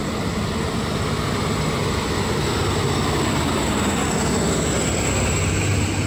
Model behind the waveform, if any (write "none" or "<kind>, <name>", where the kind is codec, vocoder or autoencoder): none